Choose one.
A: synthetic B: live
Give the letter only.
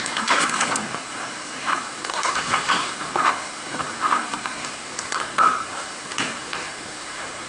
A